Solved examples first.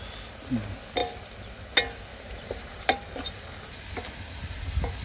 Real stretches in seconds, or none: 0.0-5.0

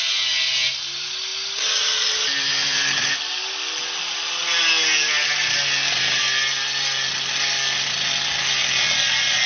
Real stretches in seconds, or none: 0.0-9.5

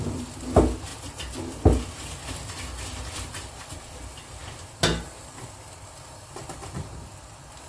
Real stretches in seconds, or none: 0.0-7.7

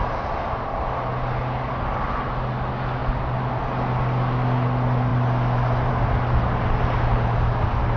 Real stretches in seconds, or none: 0.0-8.0